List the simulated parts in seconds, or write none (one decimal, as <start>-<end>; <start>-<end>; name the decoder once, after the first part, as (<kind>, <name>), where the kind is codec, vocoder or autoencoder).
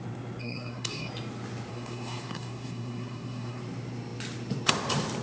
0.4-1.1 (codec, SNAC); 1.7-3.6